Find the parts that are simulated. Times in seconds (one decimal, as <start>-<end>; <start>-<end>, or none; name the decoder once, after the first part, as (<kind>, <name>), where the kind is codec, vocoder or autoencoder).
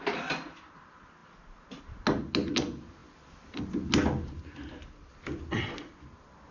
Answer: none